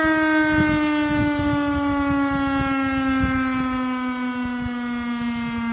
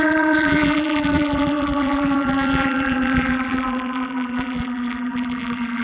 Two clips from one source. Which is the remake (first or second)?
second